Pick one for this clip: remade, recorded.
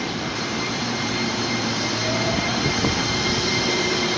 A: remade